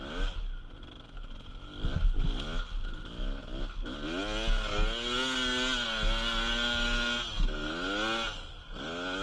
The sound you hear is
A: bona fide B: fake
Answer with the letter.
A